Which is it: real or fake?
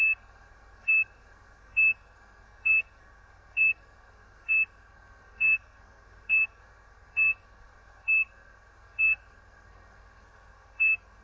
fake